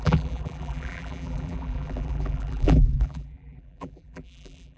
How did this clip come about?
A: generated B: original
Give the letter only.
A